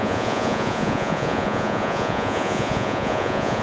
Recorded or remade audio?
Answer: remade